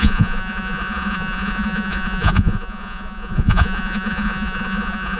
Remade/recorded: remade